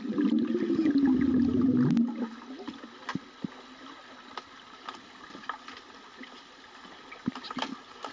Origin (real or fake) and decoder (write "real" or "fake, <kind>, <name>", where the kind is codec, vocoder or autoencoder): real